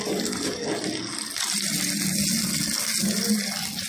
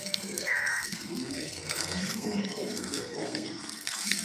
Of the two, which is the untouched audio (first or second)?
first